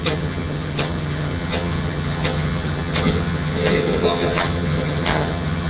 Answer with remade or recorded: remade